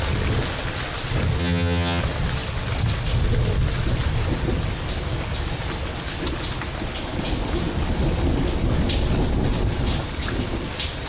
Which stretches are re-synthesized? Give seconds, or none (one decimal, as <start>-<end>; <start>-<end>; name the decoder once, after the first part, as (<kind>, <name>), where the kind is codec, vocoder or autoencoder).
1.4-2.0 (vocoder, HiFi-GAN)